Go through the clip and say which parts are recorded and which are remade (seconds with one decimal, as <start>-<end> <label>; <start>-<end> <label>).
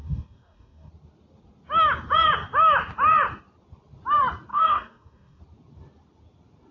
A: 0.0-0.9 remade; 0.9-4.5 recorded; 4.5-5.4 remade; 5.4-6.7 recorded